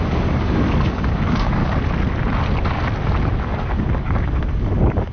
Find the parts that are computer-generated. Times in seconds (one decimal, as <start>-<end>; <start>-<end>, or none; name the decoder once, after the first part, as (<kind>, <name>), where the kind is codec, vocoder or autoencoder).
0.0-1.6 (codec, DAC); 3.4-5.1